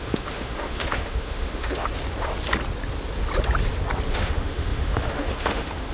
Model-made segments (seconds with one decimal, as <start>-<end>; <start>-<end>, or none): 0.0-1.9; 4.1-5.9